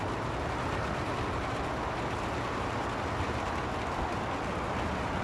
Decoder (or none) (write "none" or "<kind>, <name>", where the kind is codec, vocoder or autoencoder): none